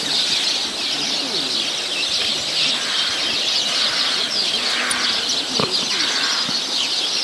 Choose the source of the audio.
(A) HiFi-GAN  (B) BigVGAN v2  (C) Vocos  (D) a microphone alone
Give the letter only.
D